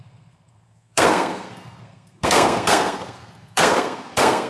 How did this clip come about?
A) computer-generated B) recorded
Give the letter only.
A